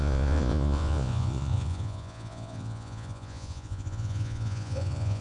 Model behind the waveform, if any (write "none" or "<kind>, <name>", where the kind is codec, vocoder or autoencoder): vocoder, Vocos